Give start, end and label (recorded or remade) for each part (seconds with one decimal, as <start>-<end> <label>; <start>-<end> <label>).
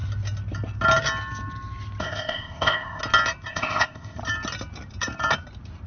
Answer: 0.0-2.0 recorded; 2.0-3.0 remade; 3.0-3.5 recorded; 3.5-4.2 remade; 4.2-5.9 recorded